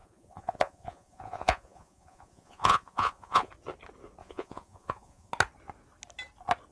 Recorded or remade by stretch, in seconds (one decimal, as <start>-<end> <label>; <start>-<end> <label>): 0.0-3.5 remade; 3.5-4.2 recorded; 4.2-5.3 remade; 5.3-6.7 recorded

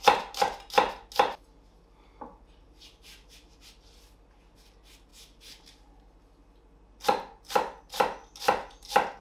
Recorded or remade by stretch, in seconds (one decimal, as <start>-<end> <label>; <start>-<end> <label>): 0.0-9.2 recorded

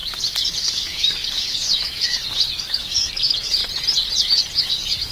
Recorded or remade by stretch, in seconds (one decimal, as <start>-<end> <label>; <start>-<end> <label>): 0.0-3.6 remade; 3.6-4.6 recorded; 4.6-5.1 remade

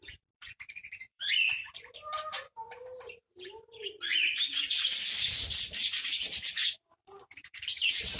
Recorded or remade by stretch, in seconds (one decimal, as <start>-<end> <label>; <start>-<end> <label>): 0.0-8.2 remade

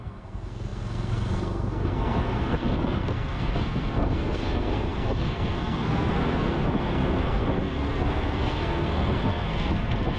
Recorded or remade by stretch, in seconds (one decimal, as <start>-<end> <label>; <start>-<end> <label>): 0.0-10.2 remade

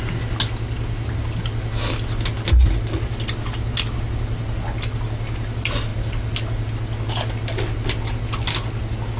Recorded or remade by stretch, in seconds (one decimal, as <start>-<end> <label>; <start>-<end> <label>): 0.0-9.2 recorded